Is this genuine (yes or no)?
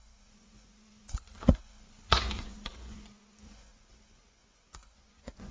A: no